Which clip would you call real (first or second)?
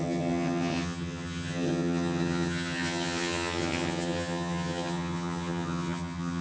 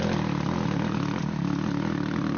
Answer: second